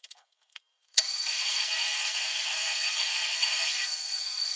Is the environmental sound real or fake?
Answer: fake